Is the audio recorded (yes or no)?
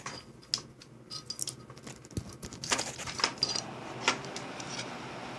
yes